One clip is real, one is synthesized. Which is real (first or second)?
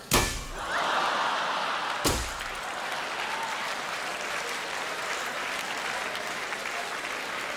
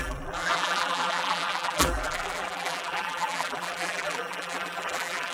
first